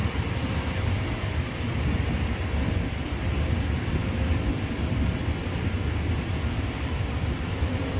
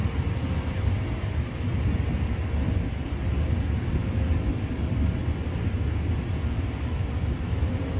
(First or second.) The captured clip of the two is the second